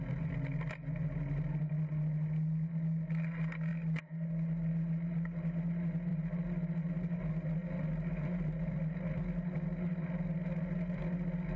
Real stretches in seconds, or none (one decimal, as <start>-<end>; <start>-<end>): 0.0-11.6